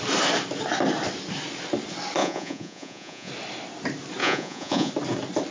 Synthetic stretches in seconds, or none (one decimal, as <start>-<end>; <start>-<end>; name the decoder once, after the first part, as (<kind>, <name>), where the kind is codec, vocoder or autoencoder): 2.2-3.3 (vocoder, Vocos); 4.2-4.9